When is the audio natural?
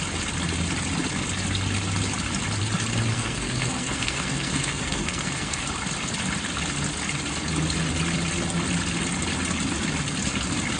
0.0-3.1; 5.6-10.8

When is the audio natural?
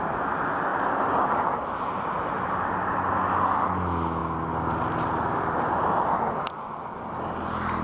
0.0-7.8